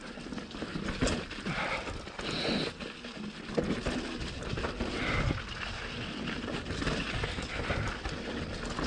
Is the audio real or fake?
real